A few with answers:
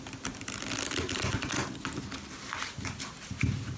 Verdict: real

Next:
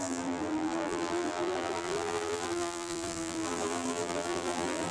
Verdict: fake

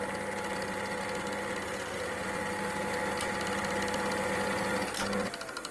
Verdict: real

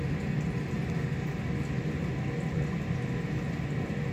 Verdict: real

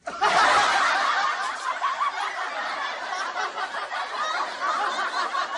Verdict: real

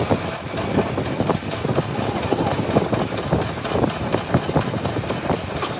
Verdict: fake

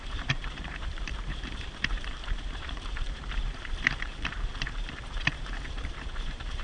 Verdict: fake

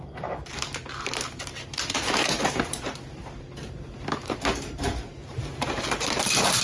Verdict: fake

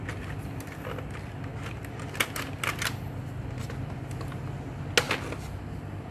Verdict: real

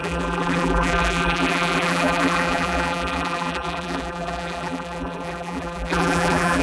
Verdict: fake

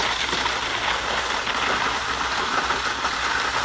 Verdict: real